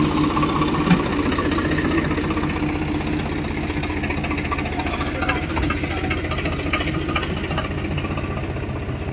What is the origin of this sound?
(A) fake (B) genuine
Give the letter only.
B